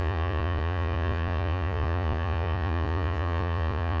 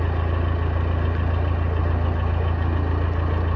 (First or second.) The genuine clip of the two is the second